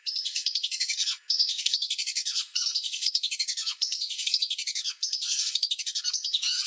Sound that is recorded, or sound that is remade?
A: remade